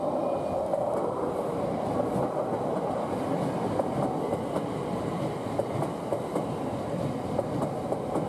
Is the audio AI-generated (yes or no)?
no